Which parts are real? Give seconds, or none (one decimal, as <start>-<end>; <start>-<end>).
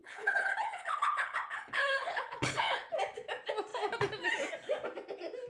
2.9-5.5